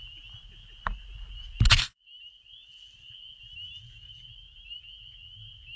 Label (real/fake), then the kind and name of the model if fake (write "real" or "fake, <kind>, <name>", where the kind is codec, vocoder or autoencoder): real